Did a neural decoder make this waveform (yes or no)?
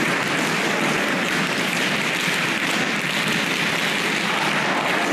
no